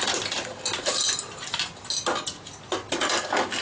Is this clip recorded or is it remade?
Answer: recorded